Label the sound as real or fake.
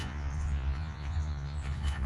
fake